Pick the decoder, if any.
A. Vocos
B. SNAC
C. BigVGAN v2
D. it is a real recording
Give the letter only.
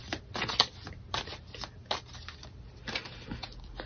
D